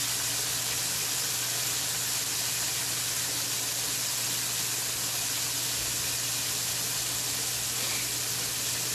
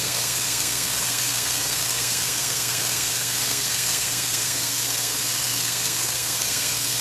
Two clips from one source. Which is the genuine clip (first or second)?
first